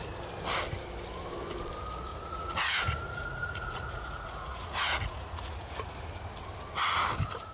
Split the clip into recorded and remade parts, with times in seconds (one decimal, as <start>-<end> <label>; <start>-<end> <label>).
0.0-2.1 recorded; 2.1-6.1 remade; 6.1-7.5 recorded